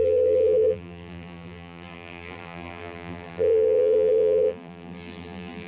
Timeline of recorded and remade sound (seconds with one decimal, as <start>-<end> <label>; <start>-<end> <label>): 0.0-5.7 remade